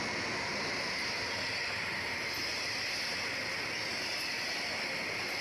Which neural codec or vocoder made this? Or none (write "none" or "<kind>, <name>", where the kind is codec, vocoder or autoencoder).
none